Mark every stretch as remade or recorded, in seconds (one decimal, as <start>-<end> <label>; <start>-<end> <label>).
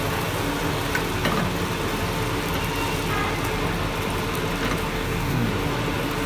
0.0-4.9 recorded; 4.9-5.5 remade; 5.5-6.3 recorded